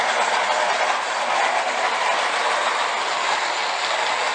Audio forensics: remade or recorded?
recorded